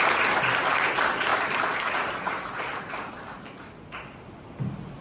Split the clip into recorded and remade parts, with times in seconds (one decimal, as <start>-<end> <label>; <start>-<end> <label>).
0.0-1.3 recorded; 1.3-3.2 remade; 3.2-5.0 recorded